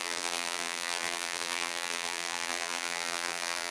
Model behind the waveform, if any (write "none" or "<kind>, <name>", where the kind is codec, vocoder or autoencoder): vocoder, BigVGAN v2